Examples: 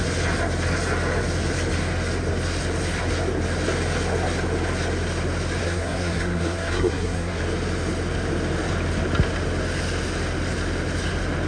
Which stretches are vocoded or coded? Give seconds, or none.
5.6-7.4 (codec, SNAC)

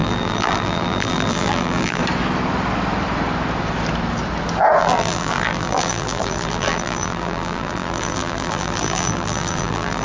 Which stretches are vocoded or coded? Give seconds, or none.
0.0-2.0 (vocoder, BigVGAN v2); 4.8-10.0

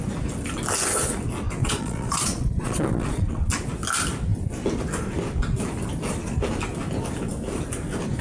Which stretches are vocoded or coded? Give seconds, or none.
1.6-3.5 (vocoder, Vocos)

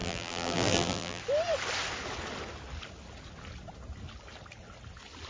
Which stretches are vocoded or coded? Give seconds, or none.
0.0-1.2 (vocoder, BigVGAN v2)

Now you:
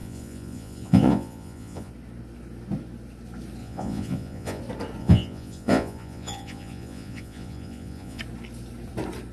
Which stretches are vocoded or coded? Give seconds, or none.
0.0-1.9 (vocoder, Vocos); 3.6-4.6; 5.0-8.2